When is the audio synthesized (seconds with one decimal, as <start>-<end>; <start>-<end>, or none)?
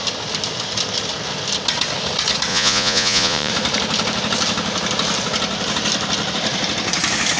2.5-3.5